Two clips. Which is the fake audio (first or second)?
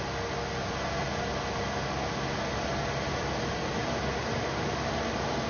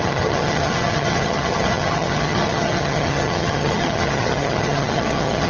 second